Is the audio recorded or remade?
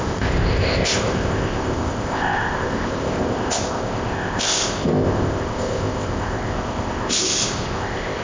remade